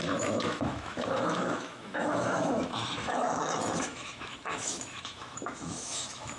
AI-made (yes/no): yes